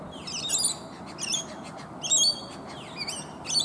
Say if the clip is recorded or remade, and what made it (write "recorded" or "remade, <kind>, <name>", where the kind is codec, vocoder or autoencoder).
recorded